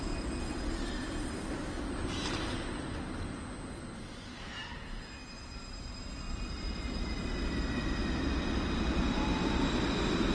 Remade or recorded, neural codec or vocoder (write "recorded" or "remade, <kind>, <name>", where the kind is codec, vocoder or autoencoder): recorded